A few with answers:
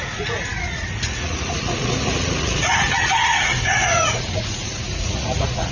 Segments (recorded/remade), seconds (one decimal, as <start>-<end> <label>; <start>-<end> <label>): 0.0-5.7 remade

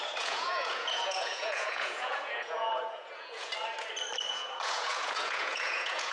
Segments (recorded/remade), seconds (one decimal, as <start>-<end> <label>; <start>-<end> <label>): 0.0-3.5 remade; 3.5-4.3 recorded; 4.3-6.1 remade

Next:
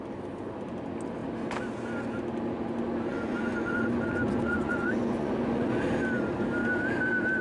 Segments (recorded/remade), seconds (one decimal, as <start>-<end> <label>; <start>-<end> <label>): 0.0-3.1 recorded; 3.1-5.7 remade; 5.7-7.4 recorded